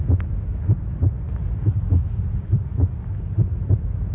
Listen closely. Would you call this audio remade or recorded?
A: recorded